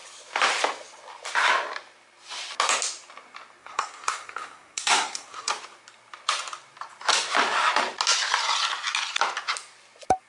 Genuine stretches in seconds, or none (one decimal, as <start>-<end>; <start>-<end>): 0.0-3.6; 5.5-10.3